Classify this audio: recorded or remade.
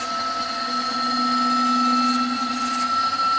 recorded